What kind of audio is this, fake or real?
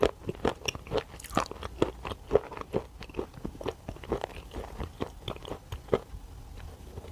real